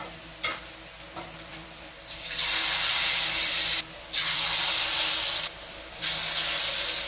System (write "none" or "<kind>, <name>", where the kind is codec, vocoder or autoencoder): vocoder, BigVGAN v2